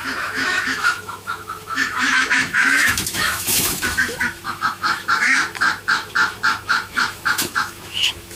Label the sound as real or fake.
fake